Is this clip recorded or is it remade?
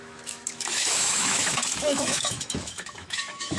remade